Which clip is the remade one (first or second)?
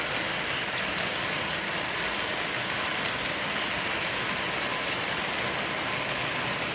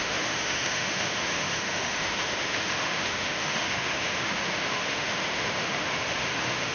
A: second